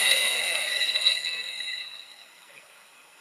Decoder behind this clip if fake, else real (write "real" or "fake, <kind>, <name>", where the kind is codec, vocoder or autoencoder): fake, codec, SNAC